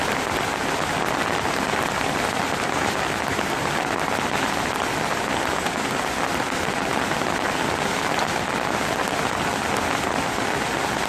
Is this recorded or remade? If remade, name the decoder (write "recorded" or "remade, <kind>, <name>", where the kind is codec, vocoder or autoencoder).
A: recorded